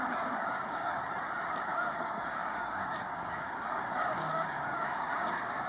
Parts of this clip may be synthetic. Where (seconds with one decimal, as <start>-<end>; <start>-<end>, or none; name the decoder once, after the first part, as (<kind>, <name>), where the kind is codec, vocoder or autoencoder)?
0.0-1.0 (codec, DAC); 1.6-5.7